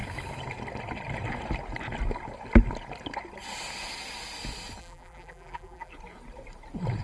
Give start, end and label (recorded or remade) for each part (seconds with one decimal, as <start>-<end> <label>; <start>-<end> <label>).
0.0-4.8 recorded; 4.8-5.9 remade; 5.9-7.0 recorded